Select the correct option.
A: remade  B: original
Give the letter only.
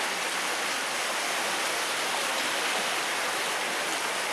B